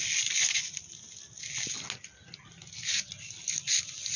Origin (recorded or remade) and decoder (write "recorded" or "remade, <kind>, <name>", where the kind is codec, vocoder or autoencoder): recorded